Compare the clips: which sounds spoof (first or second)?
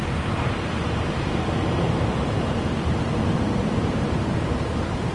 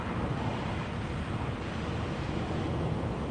first